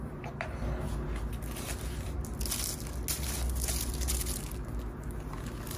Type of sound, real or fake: real